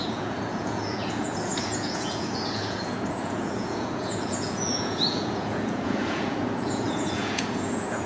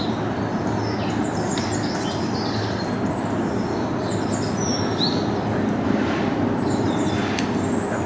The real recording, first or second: second